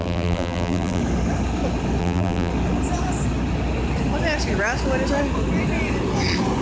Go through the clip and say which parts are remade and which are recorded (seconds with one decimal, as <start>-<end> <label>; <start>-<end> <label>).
0.0-1.0 remade; 1.0-2.0 recorded; 2.0-2.5 remade; 2.5-6.6 recorded

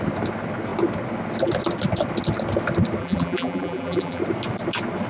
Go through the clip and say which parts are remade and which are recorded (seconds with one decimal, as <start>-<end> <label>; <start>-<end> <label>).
0.0-3.0 recorded; 3.0-4.2 remade; 4.2-5.1 recorded

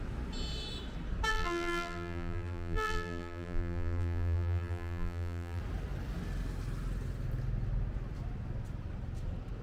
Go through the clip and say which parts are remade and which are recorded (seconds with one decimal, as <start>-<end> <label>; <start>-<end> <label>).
0.0-1.3 recorded; 1.3-5.6 remade; 5.6-9.6 recorded